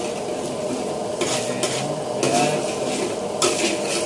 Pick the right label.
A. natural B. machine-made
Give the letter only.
A